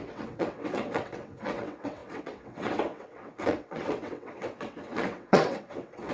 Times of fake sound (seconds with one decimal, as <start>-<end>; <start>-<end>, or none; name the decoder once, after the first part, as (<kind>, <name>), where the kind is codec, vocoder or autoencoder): 0.0-6.1 (vocoder, WaveNeXt)